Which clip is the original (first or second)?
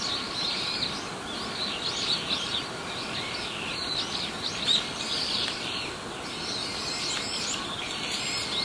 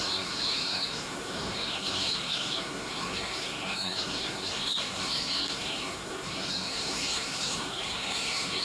first